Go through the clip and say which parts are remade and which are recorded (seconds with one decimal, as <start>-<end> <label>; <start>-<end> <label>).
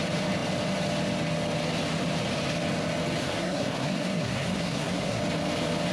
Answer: 0.0-3.2 recorded; 3.2-5.2 remade; 5.2-5.9 recorded